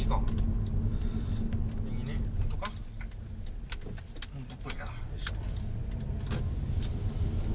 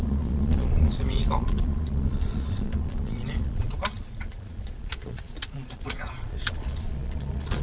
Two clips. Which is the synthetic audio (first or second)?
second